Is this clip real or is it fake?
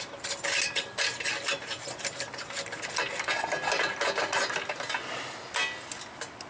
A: real